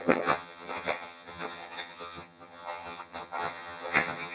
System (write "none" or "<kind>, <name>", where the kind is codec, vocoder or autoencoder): vocoder, HiFi-GAN